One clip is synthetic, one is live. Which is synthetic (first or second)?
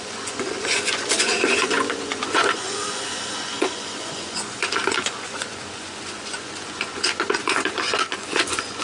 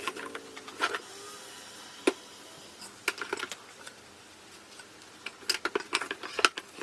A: first